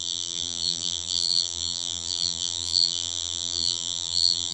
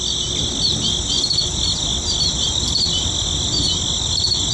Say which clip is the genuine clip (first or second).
second